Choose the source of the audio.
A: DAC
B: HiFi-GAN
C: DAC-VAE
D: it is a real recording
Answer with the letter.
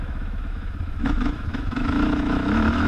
C